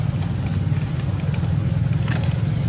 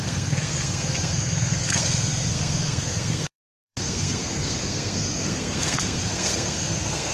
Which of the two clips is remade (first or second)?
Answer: second